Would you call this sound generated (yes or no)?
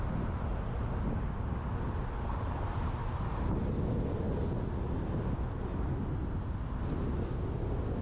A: no